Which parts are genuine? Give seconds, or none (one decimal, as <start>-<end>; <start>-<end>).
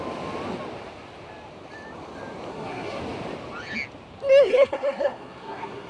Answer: 0.0-2.5; 3.0-4.5